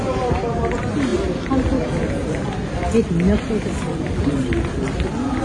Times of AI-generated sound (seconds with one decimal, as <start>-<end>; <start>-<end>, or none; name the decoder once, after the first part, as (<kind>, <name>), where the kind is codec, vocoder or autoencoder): none